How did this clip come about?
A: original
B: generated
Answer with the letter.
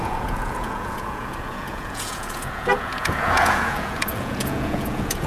B